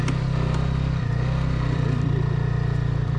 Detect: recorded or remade remade